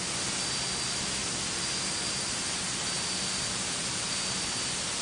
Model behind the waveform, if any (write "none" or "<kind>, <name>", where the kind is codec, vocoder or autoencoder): none